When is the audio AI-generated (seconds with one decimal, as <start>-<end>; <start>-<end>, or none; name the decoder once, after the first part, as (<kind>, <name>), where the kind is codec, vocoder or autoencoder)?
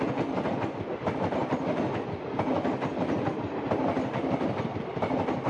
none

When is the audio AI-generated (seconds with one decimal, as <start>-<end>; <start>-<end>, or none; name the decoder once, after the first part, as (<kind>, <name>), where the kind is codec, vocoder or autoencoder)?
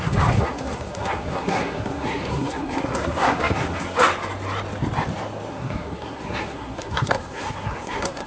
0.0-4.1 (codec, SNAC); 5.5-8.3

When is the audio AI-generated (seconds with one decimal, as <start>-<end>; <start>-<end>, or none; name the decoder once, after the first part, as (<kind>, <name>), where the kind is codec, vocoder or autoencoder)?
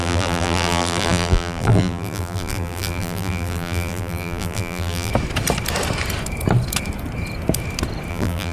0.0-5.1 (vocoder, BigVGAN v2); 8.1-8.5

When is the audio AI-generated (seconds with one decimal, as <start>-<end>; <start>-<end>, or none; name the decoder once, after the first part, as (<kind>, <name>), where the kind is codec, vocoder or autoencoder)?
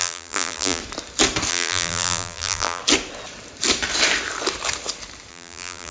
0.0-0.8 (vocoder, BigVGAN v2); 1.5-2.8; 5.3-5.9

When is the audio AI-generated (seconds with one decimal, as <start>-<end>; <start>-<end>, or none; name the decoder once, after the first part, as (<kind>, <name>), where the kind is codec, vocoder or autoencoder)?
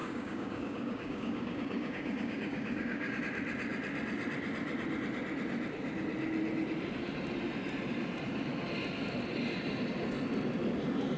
0.0-3.2 (codec, DAC)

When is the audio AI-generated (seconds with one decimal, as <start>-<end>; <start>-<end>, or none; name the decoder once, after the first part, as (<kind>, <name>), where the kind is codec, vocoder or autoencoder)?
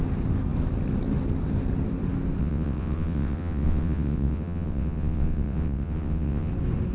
2.4-6.5 (vocoder, WaveNeXt)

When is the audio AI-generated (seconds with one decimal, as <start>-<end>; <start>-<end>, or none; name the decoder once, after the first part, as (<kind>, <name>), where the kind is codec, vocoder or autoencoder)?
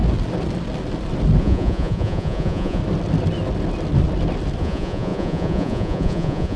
1.4-2.8 (vocoder, Vocos); 4.6-6.6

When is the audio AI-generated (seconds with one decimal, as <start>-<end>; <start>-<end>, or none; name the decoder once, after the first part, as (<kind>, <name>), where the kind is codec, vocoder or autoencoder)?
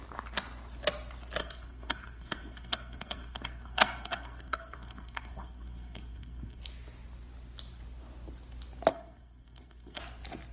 1.4-6.6 (codec, SNAC); 8.9-10.0